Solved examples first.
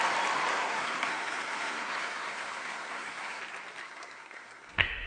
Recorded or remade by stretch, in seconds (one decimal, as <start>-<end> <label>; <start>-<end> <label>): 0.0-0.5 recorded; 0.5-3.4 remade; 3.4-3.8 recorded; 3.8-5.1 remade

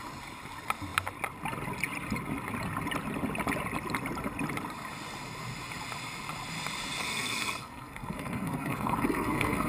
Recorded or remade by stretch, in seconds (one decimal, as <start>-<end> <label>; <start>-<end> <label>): 0.0-7.0 recorded; 7.0-9.7 remade

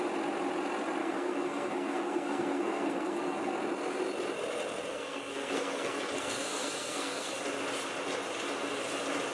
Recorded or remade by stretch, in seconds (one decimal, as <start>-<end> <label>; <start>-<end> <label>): 0.0-1.0 recorded; 1.0-3.5 remade; 3.5-4.9 recorded; 4.9-7.3 remade; 7.3-9.3 recorded

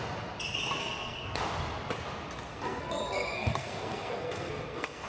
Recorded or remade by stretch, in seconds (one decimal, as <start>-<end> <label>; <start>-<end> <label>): 0.0-0.8 recorded; 0.8-1.4 remade; 1.4-2.5 recorded; 2.5-5.1 remade

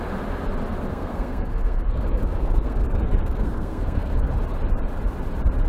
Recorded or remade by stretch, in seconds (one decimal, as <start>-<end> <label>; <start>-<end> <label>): 0.0-0.9 recorded; 0.9-4.3 remade; 4.3-5.7 recorded